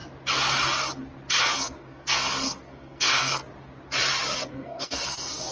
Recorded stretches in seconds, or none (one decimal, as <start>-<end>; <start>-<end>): 0.0-1.4; 3.4-4.5